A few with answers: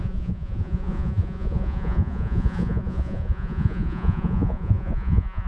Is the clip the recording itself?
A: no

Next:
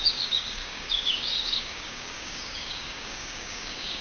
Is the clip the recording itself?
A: no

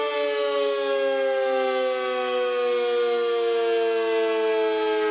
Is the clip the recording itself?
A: yes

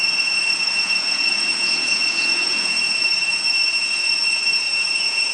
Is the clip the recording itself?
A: no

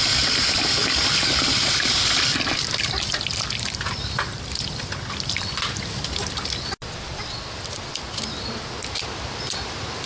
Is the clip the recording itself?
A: yes